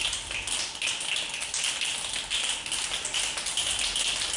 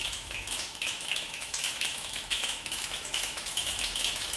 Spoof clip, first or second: second